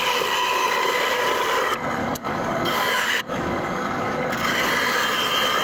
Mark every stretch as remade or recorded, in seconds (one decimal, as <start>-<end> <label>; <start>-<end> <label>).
0.0-2.0 recorded; 2.0-4.7 remade; 4.7-5.6 recorded